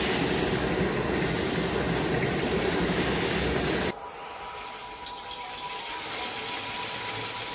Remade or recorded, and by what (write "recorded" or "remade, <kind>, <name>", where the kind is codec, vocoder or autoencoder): recorded